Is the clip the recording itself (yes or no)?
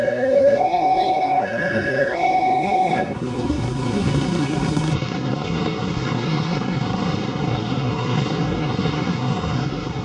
no